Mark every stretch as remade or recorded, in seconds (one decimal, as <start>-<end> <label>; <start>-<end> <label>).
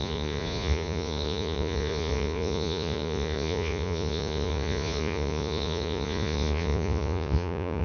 0.0-7.8 remade